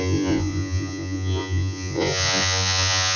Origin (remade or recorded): remade